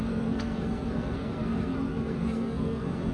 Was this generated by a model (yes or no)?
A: yes